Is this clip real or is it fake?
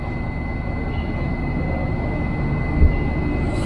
real